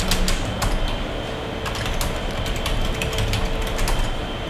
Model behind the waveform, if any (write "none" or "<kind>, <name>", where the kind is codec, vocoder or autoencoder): none